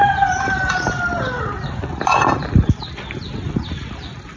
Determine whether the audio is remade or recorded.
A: remade